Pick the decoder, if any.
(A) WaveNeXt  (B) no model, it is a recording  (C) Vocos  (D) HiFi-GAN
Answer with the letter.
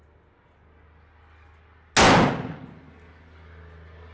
B